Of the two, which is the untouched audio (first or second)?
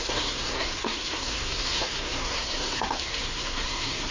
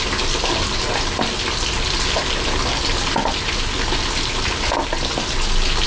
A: second